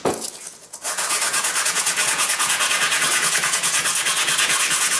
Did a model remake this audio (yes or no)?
yes